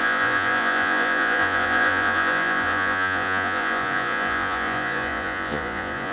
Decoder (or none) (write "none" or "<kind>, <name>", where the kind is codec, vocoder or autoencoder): vocoder, Vocos